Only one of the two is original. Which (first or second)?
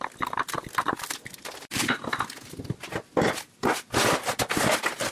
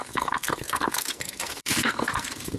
first